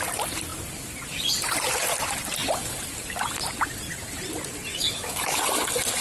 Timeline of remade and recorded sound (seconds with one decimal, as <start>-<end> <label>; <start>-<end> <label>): 0.0-4.8 recorded; 4.8-5.4 remade; 5.4-6.0 recorded